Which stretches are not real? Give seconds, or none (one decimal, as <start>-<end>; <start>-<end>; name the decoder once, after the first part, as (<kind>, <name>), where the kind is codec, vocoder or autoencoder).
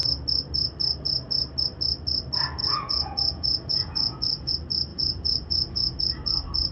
2.6-4.5 (vocoder, Vocos); 4.9-6.0